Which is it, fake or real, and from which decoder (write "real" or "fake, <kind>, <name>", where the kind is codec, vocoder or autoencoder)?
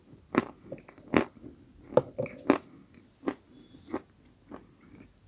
real